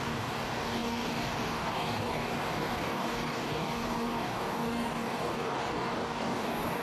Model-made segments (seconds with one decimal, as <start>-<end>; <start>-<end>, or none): 0.0-6.8